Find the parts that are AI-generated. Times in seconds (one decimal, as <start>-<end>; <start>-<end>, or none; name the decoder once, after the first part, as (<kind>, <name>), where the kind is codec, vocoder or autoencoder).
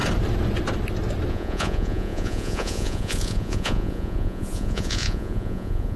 1.3-6.0 (vocoder, Vocos)